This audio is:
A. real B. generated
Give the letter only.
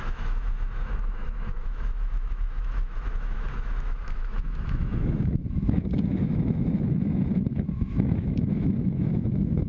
B